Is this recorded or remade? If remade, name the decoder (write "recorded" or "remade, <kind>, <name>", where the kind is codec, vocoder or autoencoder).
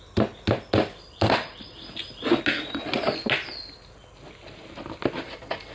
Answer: recorded